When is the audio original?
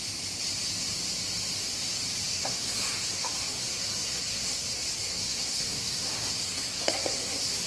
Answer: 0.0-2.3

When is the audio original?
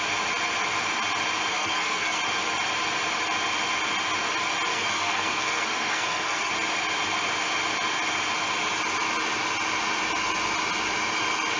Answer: 0.0-1.5; 2.2-4.7; 6.5-11.6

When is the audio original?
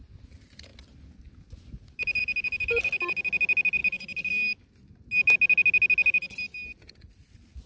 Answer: 0.0-7.7